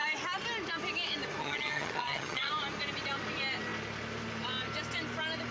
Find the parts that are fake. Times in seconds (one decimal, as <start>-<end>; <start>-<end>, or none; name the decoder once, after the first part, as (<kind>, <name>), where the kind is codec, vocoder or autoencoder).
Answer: 1.4-2.5 (vocoder, HiFi-GAN)